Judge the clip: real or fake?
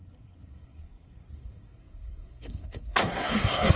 fake